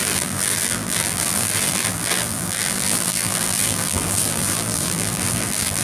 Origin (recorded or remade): remade